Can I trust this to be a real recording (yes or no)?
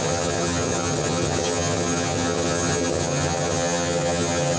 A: no